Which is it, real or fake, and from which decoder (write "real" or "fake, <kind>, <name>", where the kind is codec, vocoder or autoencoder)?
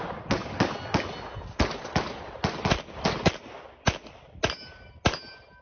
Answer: real